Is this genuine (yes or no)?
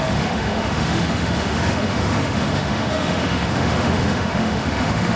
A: no